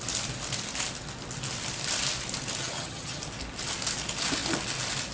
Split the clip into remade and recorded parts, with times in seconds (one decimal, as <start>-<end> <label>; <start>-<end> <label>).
0.0-2.6 recorded; 2.6-3.2 remade; 3.2-5.1 recorded